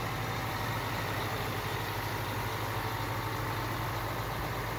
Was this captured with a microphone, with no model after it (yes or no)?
yes